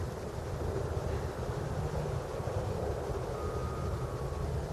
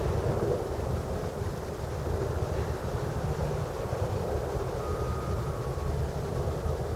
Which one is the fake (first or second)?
second